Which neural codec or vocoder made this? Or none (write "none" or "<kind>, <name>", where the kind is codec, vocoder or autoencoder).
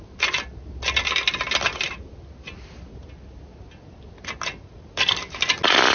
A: none